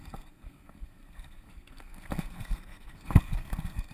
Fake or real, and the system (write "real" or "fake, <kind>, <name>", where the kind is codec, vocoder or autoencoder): fake, codec, SNAC